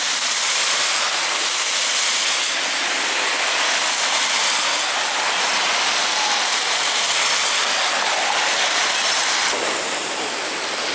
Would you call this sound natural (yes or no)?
yes